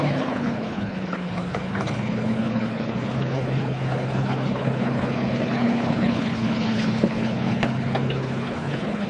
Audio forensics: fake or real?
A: fake